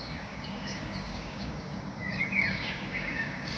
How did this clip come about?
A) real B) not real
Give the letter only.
B